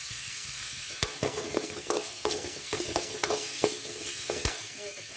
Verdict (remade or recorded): remade